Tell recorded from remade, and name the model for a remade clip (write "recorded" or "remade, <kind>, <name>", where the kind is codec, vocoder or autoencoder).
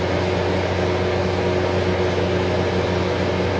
recorded